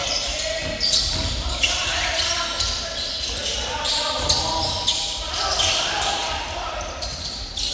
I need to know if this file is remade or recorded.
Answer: remade